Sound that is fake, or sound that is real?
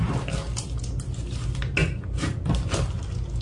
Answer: real